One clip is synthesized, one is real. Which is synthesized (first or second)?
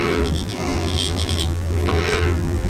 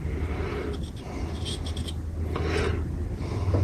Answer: first